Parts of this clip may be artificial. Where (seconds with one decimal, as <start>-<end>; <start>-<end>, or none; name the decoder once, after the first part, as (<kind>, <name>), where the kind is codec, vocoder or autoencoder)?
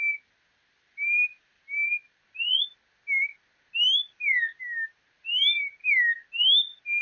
none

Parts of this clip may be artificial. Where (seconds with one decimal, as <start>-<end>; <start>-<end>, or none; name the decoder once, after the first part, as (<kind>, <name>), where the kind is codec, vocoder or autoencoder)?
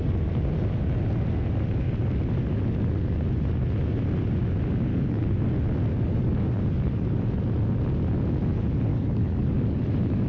4.9-5.4 (codec, DAC); 5.9-7.2; 8.9-9.8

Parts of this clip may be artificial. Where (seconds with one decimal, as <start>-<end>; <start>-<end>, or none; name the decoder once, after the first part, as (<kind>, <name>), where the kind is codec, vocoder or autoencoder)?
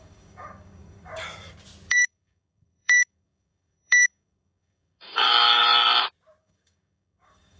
0.0-1.1 (codec, DAC); 1.9-5.6; 6.4-7.6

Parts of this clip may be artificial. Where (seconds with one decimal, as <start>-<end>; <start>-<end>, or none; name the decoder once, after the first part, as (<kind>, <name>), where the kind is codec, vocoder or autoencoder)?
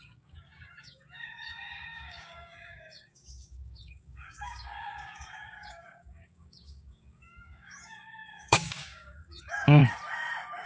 0.0-9.8 (codec, DAC)